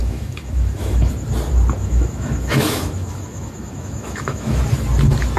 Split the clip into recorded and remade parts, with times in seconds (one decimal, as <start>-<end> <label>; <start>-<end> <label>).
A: 0.0-1.1 remade; 1.1-1.8 recorded; 1.8-4.6 remade; 4.6-5.4 recorded